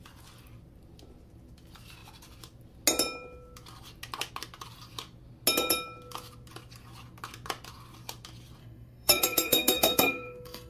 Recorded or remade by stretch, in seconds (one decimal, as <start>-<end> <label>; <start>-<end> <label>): 0.0-8.6 recorded; 8.6-10.7 remade

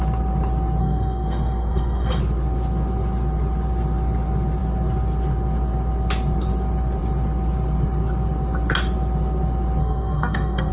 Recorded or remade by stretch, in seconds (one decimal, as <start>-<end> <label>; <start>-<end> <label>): 0.0-0.8 recorded; 0.8-2.2 remade; 2.2-9.8 recorded; 9.8-10.7 remade

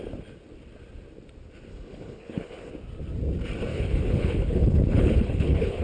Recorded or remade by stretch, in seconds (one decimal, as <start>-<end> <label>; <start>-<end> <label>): 0.0-1.7 recorded; 1.7-2.7 remade; 2.7-3.7 recorded; 3.7-5.8 remade

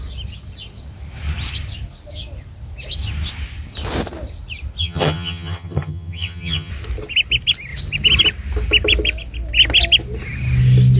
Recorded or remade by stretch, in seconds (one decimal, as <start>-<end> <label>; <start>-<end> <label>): 0.0-4.8 recorded; 4.8-6.7 remade; 6.7-11.0 recorded

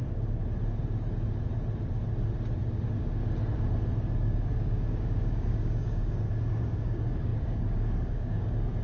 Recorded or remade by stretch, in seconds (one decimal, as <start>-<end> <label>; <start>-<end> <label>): 0.0-0.4 remade; 0.4-2.6 recorded; 2.6-3.2 remade; 3.2-4.2 recorded; 4.2-8.8 remade

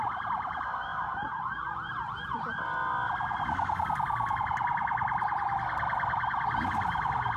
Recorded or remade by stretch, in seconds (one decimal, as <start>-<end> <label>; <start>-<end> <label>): 0.0-7.4 recorded